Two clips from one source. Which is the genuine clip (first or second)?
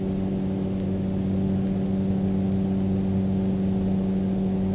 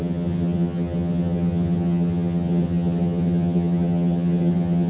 first